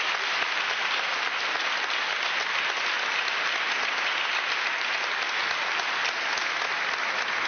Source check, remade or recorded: recorded